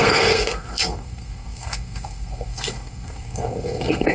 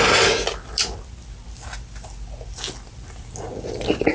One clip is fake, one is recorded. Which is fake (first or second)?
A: first